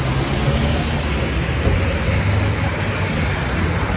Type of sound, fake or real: real